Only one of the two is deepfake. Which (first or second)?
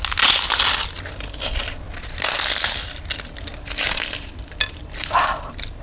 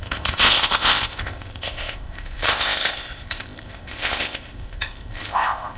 second